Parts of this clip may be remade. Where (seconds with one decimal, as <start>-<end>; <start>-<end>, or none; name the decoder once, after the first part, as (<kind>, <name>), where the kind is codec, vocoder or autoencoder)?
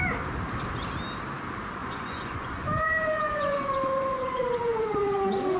1.8-5.6 (vocoder, Vocos)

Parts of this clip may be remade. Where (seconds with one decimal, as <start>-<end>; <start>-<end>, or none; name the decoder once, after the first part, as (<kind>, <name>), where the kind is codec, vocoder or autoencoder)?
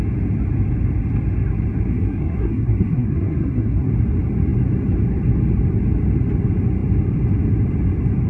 1.9-3.9 (codec, SNAC)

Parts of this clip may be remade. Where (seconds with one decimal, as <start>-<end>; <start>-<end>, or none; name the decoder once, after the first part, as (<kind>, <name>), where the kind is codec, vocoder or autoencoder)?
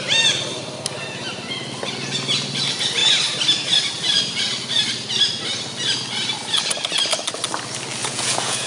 8.0-8.7 (vocoder, Vocos)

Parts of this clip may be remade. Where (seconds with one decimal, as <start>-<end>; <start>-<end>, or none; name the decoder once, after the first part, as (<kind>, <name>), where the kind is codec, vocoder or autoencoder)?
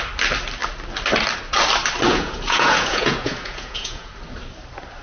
2.1-4.1 (vocoder, Vocos)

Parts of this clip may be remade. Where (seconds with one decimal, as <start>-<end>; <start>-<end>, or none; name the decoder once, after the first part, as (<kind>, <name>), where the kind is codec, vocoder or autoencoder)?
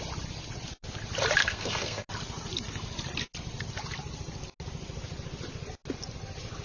1.4-2.1 (codec, SNAC)